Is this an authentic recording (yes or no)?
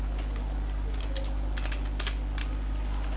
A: yes